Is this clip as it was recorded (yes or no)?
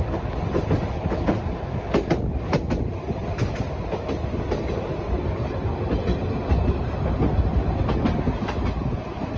yes